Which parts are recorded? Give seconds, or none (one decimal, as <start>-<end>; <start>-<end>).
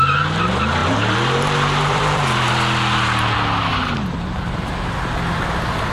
0.0-0.8; 2.5-3.7; 4.7-5.9